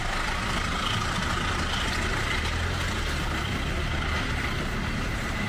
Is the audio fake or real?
real